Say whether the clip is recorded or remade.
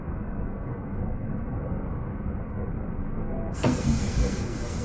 remade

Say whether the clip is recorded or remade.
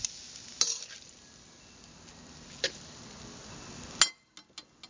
recorded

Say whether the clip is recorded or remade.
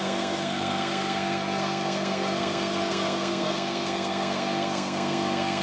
remade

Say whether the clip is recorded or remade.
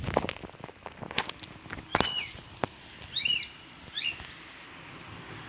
recorded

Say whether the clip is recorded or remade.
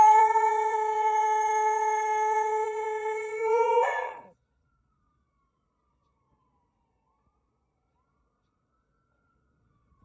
remade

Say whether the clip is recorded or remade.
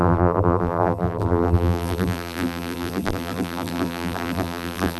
remade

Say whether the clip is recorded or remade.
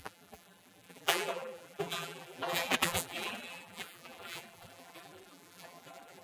remade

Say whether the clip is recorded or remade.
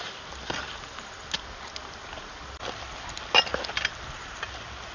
recorded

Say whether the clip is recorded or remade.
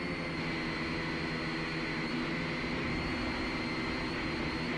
recorded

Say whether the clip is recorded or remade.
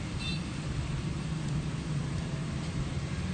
recorded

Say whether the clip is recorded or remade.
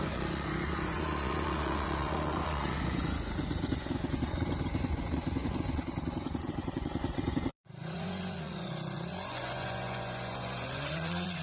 remade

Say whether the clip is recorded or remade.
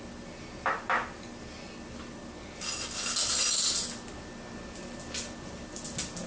recorded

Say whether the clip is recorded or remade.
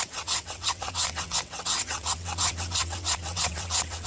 remade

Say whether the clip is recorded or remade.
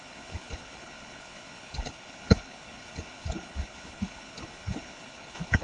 remade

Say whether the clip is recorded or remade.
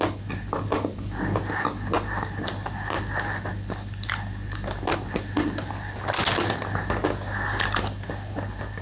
recorded